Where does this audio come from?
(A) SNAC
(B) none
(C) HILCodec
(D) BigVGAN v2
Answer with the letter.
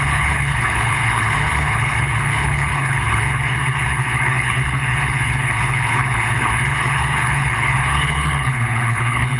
C